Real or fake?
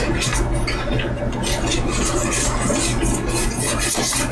real